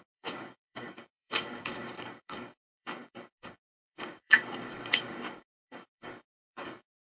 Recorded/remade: remade